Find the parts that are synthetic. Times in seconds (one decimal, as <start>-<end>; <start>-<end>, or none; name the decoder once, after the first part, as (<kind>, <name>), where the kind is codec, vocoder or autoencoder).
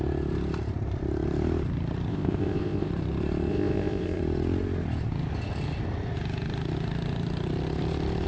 2.1-2.9 (codec, ZipCodec); 3.5-4.2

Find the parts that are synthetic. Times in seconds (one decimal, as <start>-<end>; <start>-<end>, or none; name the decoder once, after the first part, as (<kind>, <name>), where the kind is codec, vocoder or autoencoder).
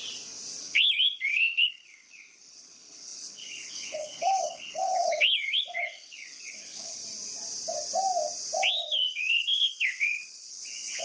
0.6-7.0 (codec, HILCodec); 8.7-11.0